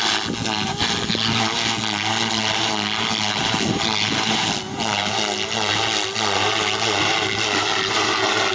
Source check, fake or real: real